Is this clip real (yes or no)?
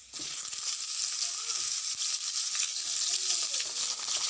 yes